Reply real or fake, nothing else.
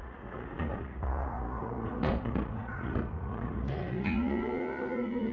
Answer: fake